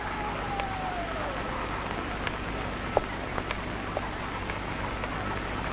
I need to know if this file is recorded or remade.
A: recorded